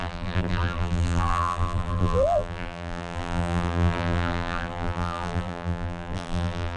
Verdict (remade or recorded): remade